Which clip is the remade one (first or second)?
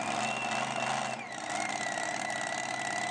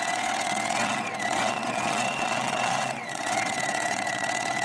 second